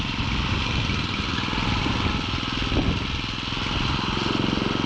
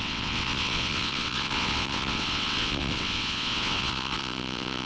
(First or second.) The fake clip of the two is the second